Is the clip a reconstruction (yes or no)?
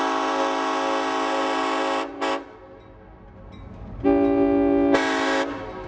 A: no